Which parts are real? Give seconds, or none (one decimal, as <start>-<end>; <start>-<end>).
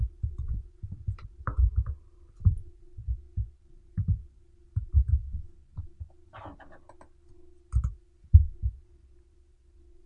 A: 3.0-3.7; 5.2-8.2